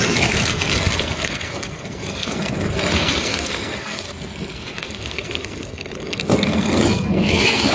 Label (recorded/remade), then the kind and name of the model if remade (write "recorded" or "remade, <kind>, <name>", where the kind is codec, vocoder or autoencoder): remade, codec, SNAC